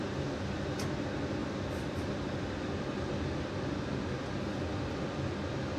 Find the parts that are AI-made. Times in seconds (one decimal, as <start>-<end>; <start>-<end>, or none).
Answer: none